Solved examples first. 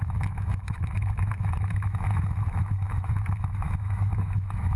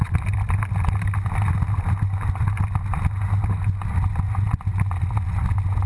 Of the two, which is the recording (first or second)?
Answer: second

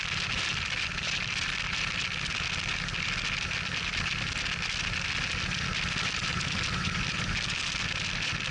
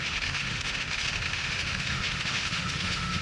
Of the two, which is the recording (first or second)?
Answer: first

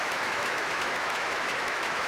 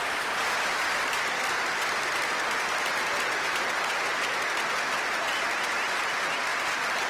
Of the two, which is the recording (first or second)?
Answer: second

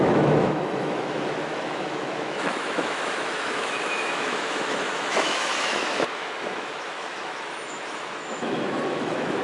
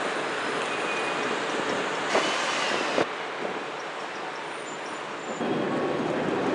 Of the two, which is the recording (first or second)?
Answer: second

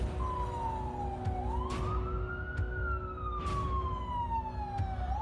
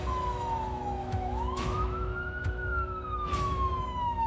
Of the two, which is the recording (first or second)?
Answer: first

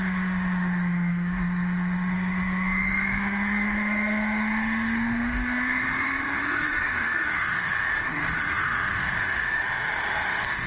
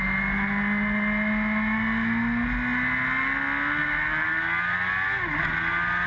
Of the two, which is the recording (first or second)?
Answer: second